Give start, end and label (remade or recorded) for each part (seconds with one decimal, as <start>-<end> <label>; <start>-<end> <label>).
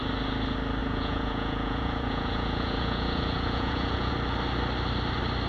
0.0-0.8 recorded; 0.8-4.1 remade; 4.1-5.5 recorded